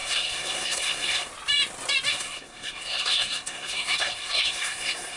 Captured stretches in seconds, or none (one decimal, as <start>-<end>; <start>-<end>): 1.3-2.1